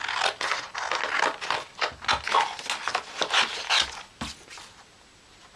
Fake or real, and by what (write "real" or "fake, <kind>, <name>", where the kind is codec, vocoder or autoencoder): real